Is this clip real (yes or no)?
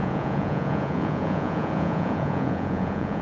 no